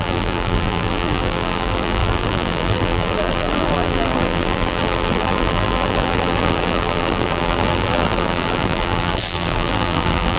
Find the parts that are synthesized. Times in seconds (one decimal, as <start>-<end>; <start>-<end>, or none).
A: 0.0-10.4